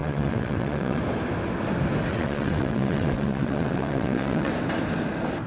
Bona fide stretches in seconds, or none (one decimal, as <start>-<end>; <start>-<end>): 1.0-2.1; 4.5-5.5